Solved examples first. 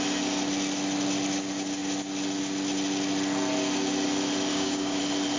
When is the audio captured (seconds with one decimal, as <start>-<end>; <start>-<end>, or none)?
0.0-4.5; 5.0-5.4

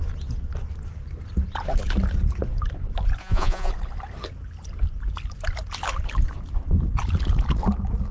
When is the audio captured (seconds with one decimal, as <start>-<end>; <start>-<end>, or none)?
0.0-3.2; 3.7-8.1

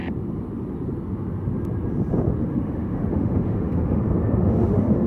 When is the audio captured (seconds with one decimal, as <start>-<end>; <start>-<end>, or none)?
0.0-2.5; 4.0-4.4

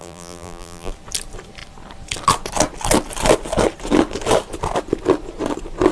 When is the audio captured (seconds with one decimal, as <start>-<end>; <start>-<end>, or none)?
0.9-5.9

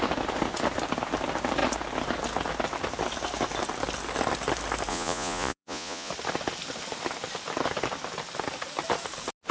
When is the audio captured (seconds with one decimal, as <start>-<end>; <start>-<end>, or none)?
0.0-4.9; 6.1-9.5

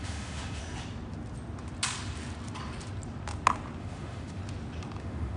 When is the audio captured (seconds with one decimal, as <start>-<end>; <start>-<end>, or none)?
0.6-3.8; 4.4-5.0